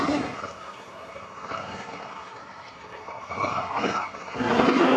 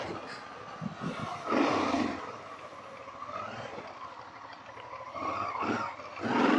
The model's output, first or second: first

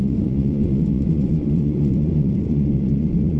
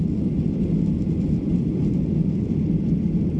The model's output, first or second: first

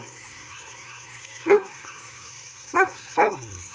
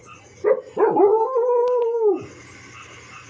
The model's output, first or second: first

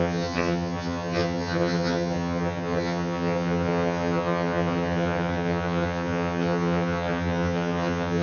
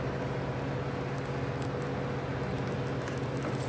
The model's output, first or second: first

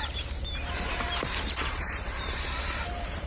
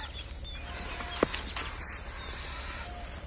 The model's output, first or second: first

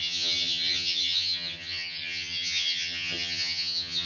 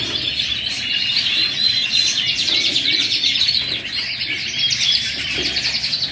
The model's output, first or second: first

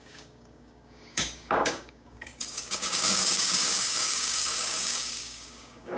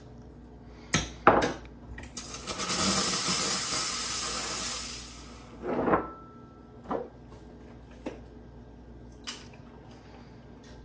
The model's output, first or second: first